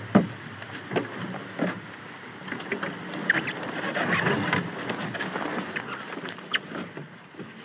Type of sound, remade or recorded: recorded